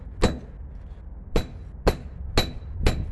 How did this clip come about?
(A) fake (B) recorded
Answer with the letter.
B